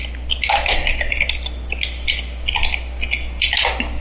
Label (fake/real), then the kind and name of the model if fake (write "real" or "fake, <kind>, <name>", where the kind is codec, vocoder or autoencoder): real